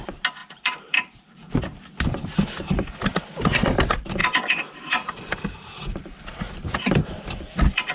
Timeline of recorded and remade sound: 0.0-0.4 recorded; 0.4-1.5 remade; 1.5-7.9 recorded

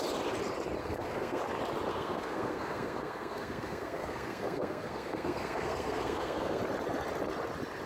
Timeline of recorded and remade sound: 0.0-0.8 recorded; 0.8-1.4 remade; 1.4-1.9 recorded; 1.9-6.6 remade; 6.6-7.9 recorded